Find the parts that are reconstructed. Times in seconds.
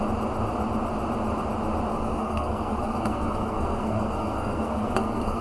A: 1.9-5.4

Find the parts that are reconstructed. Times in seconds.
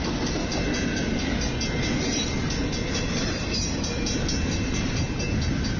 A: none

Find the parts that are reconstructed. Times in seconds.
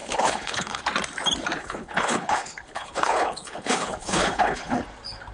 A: 0.0-0.8; 1.6-4.8